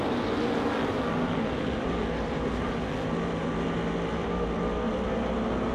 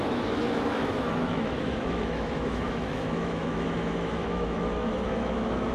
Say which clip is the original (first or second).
first